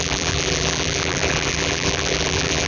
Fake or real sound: fake